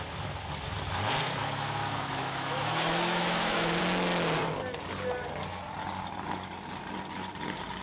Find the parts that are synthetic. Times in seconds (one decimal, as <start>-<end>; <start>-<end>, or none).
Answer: 1.4-3.8